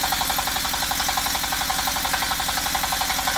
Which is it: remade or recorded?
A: recorded